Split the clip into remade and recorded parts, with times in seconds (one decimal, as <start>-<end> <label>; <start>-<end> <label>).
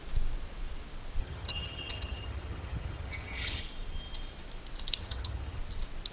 0.0-1.2 recorded; 1.2-3.6 remade; 3.6-5.0 recorded; 5.0-5.6 remade; 5.6-6.1 recorded